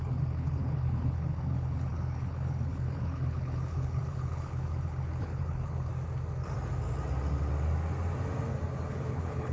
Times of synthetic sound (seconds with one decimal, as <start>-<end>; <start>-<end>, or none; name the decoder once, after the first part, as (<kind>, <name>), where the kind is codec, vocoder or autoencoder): 0.0-5.9 (codec, HILCodec); 8.9-9.5